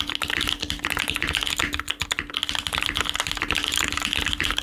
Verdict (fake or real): real